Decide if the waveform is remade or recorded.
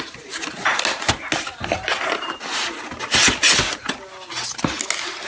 recorded